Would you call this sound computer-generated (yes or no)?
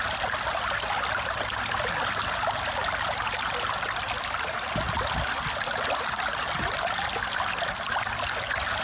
no